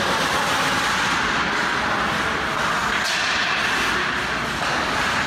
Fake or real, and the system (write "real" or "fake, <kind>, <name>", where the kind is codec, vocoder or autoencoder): real